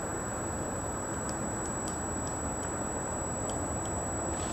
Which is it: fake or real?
real